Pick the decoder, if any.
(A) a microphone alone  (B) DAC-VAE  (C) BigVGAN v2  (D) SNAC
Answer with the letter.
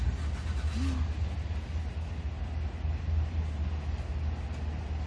A